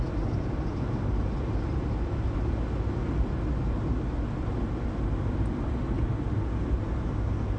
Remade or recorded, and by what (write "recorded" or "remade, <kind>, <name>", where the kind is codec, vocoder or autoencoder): recorded